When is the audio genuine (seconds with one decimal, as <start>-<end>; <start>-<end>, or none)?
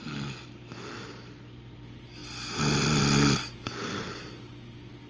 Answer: 0.0-5.1